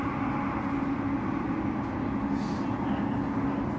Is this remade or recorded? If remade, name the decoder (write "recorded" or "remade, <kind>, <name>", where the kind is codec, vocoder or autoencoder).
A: recorded